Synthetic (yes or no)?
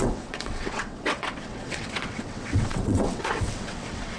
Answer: yes